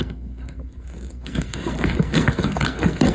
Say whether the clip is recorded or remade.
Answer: remade